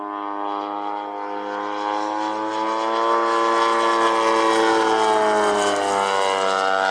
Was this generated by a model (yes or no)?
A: no